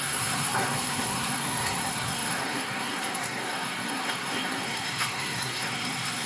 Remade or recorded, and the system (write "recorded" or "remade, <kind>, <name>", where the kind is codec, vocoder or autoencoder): remade, codec, SNAC